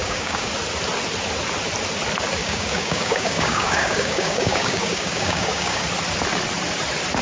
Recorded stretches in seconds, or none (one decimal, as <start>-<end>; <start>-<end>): 0.5-2.4; 5.8-7.2